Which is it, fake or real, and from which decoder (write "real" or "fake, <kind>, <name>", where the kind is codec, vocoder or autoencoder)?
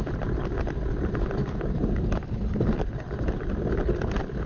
real